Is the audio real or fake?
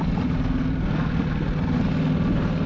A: real